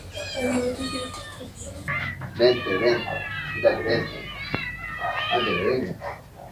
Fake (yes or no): no